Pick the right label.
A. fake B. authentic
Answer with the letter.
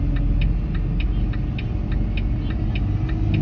B